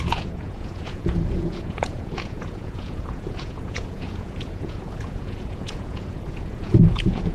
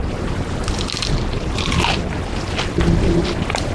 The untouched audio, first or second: second